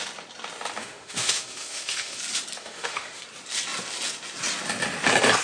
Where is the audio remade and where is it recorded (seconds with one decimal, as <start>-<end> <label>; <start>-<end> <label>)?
0.0-0.8 recorded; 0.8-2.2 remade; 2.2-2.6 recorded; 2.6-3.2 remade; 3.2-5.4 recorded